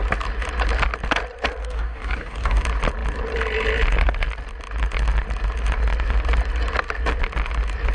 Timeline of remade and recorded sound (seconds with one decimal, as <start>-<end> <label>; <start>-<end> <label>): 0.0-1.6 recorded; 1.6-2.6 remade; 2.6-7.9 recorded